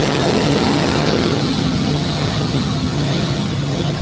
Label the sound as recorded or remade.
remade